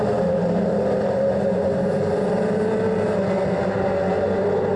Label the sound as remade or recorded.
remade